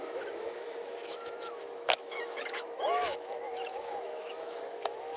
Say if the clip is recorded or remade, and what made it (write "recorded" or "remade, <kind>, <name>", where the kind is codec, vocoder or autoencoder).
remade, autoencoder, DAC-VAE